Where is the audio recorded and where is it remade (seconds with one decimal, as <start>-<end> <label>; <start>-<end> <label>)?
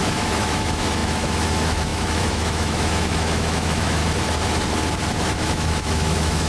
0.0-4.0 remade; 4.0-5.2 recorded; 5.2-6.5 remade